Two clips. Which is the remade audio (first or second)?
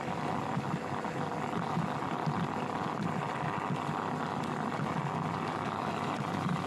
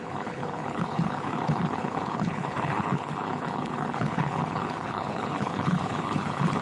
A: second